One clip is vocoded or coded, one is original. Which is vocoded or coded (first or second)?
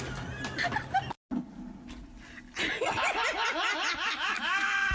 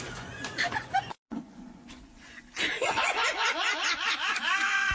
second